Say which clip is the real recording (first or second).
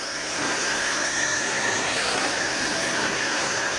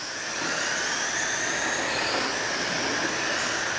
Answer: second